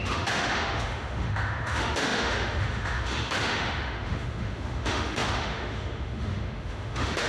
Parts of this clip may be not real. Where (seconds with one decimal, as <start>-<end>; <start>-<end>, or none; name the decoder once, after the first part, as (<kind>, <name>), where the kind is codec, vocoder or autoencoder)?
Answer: 0.0-7.3 (autoencoder, DAC-VAE)

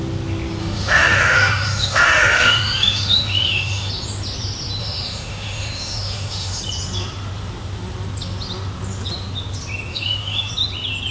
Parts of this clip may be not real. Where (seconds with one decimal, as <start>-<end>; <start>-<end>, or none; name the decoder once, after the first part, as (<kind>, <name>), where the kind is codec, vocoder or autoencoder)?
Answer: 0.6-3.9 (autoencoder, DAC-VAE); 4.8-6.6; 9.9-10.5

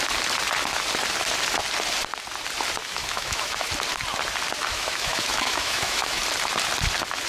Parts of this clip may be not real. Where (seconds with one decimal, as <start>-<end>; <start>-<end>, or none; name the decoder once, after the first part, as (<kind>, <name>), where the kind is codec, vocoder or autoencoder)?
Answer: 2.8-3.7 (autoencoder, DAC-VAE); 4.7-6.2

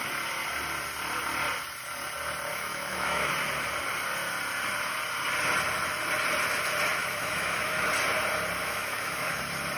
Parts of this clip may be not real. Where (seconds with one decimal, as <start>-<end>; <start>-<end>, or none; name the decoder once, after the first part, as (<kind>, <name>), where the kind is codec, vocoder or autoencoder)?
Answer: 2.5-3.3 (autoencoder, DAC-VAE); 7.0-7.9; 8.6-9.4

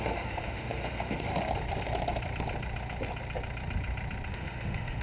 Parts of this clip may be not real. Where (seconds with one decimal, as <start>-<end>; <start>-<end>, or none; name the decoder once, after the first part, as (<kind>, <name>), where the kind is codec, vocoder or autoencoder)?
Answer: 0.0-1.3 (autoencoder, DAC-VAE); 4.3-5.0

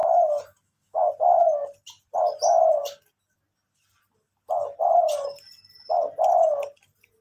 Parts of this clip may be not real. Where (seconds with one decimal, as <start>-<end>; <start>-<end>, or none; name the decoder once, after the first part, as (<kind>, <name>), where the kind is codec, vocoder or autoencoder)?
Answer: 0.0-1.1 (autoencoder, DAC-VAE)